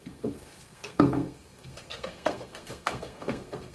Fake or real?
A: fake